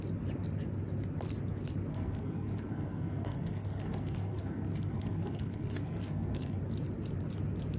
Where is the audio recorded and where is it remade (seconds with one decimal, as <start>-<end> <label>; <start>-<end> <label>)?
0.0-1.9 recorded; 1.9-6.6 remade; 6.6-7.8 recorded